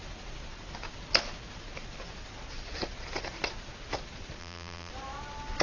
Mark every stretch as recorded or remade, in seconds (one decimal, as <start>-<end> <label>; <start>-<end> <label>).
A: 0.0-4.4 recorded; 4.4-4.9 remade; 4.9-5.6 recorded